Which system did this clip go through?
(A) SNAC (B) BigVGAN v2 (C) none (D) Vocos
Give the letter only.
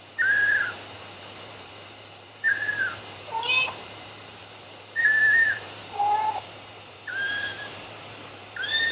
B